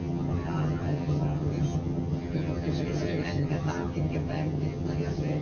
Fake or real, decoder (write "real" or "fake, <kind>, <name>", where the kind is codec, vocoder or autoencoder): fake, vocoder, HiFi-GAN